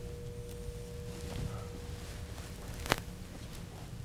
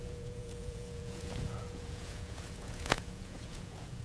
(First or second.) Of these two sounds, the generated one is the second